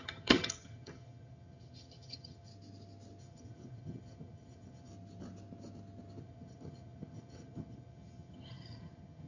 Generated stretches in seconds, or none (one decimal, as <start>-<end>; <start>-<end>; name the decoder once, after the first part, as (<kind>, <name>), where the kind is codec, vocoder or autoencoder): 0.0-2.5 (vocoder, HiFi-GAN); 3.2-4.9; 6.2-9.3